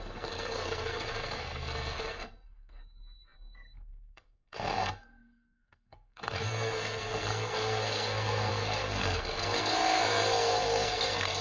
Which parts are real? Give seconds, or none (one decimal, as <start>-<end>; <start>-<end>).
none